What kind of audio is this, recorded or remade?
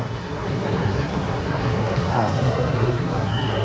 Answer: remade